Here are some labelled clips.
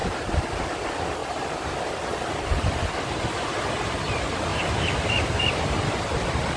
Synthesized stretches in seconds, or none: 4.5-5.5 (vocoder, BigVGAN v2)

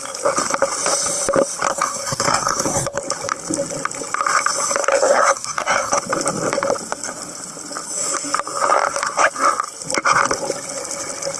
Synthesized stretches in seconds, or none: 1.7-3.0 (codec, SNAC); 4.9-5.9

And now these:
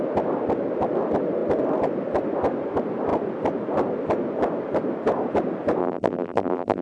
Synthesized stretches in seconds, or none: 5.8-6.8 (vocoder, BigVGAN v2)